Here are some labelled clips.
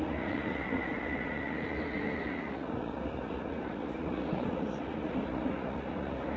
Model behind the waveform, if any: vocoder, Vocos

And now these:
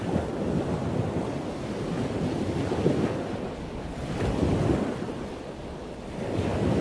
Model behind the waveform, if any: none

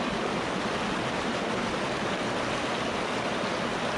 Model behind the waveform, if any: none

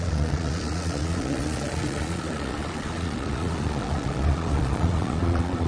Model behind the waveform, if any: vocoder, Vocos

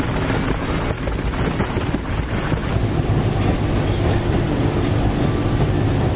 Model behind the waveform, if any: none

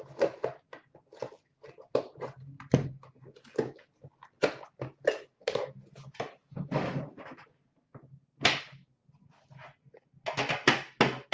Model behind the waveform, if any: none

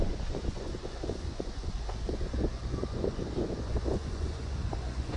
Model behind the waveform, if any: vocoder, Vocos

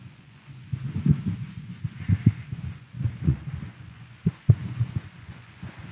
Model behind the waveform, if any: vocoder, Vocos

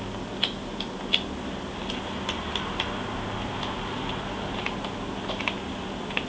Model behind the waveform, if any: none